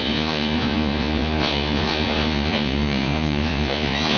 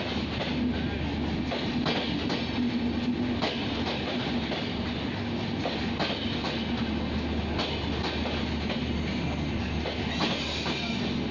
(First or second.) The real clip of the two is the second